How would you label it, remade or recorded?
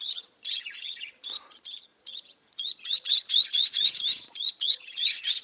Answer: remade